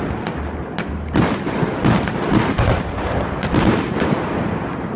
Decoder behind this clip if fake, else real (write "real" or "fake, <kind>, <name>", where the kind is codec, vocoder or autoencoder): real